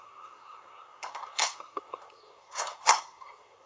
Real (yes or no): no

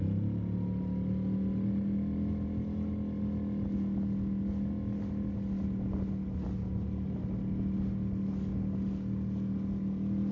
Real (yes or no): yes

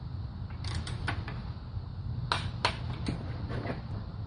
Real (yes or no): yes